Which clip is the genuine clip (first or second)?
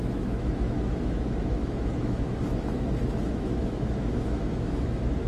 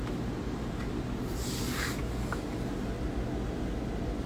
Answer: second